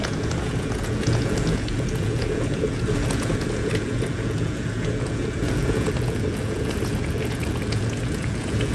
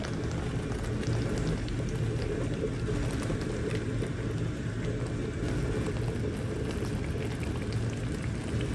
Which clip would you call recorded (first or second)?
second